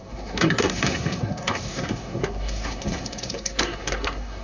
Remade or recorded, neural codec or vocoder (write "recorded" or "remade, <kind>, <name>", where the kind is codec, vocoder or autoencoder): remade, codec, SNAC